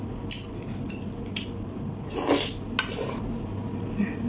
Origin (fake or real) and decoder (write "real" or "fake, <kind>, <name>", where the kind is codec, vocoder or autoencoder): real